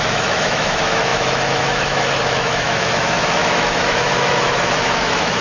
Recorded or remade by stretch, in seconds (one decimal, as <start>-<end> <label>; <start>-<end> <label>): 0.0-5.4 remade